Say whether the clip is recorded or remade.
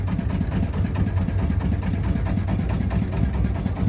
recorded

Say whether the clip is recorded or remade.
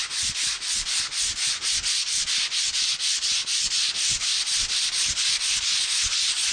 recorded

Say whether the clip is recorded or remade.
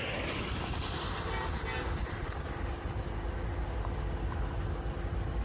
recorded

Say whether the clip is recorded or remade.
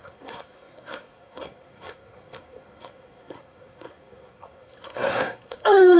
remade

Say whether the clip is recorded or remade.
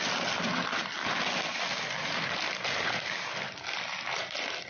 recorded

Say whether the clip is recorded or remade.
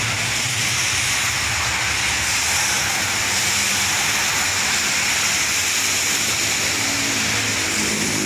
recorded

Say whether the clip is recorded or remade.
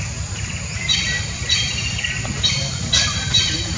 recorded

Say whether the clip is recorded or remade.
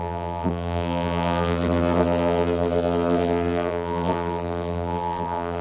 remade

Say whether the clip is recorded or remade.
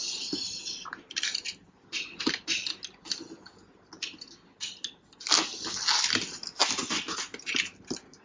recorded